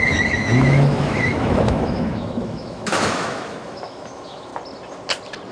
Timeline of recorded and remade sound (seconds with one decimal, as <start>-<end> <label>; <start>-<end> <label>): 0.0-4.5 remade; 4.5-5.5 recorded